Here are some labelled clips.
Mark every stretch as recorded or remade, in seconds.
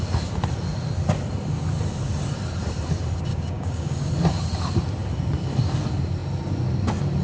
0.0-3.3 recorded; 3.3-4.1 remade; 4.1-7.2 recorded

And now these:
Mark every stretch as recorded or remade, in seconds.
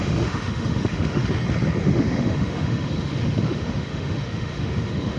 0.0-1.2 remade; 1.2-1.8 recorded; 1.8-5.2 remade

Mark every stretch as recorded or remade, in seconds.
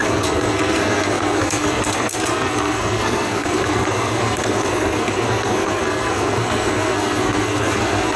0.0-8.2 remade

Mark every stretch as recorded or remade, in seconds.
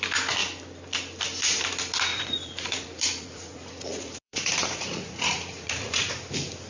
0.0-2.1 recorded; 2.1-6.1 remade; 6.1-6.7 recorded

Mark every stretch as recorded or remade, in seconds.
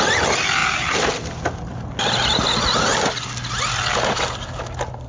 0.0-5.1 recorded